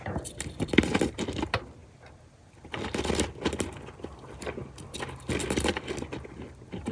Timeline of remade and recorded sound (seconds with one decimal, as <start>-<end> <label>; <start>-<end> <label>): 0.0-6.9 recorded